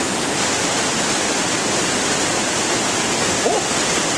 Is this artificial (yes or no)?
no